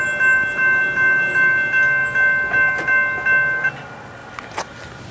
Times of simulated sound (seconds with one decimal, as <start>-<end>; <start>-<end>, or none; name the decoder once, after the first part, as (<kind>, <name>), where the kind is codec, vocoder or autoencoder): none